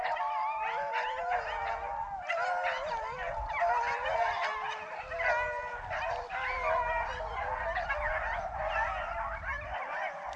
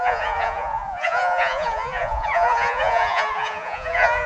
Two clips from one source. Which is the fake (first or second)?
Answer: second